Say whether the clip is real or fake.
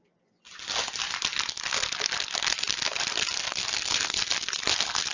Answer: real